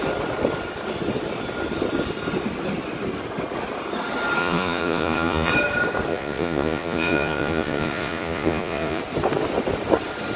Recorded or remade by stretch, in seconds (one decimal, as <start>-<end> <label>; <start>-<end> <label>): 0.0-4.4 recorded; 4.4-5.5 remade; 5.5-6.1 recorded; 6.1-9.0 remade; 9.0-10.4 recorded